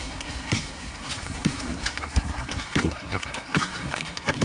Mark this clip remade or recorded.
remade